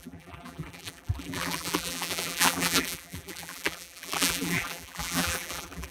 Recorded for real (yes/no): no